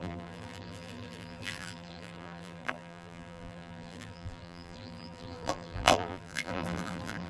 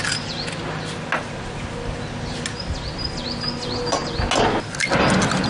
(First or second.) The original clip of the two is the second